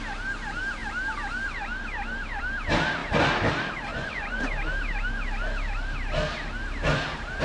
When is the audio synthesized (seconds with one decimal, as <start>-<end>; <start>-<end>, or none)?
3.9-4.4